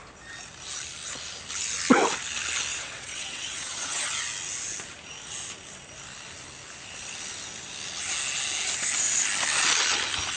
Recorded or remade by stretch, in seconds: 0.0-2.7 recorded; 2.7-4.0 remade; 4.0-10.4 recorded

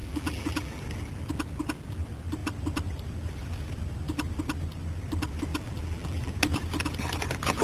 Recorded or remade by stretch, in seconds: 0.0-0.8 remade; 0.8-5.5 recorded; 5.5-6.3 remade; 6.3-7.6 recorded

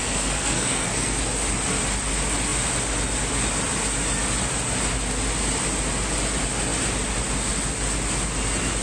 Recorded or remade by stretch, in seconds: 0.0-1.2 remade; 1.2-8.8 recorded